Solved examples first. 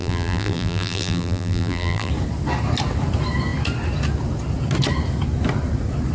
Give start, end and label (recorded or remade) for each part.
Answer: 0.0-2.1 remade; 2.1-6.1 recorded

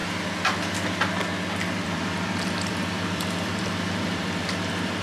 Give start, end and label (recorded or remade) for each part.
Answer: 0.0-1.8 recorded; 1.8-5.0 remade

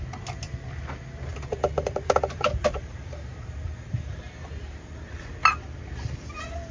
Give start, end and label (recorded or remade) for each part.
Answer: 0.0-1.3 recorded; 1.3-5.3 remade; 5.3-6.7 recorded

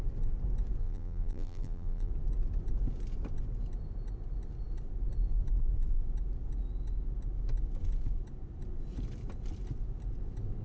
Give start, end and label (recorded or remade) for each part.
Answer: 0.0-0.8 recorded; 0.8-2.1 remade; 2.1-10.6 recorded